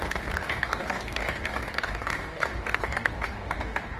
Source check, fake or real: fake